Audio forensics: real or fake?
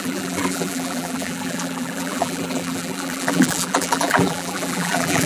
fake